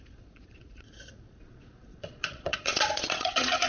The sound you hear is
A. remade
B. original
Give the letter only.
A